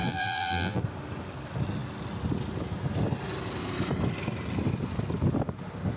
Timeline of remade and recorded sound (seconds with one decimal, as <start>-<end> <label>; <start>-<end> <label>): 0.0-0.8 remade; 0.8-6.0 recorded